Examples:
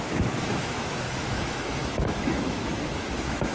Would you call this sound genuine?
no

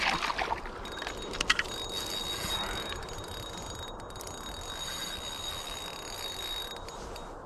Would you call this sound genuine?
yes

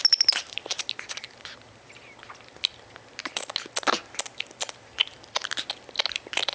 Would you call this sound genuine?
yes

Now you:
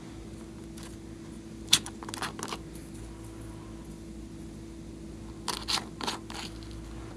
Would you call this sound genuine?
yes